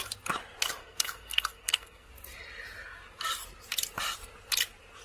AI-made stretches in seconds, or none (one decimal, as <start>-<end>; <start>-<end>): 0.8-2.1